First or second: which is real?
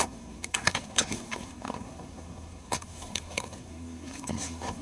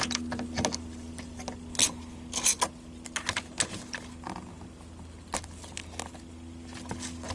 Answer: second